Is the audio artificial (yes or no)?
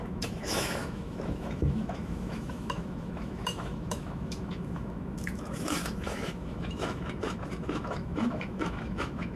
yes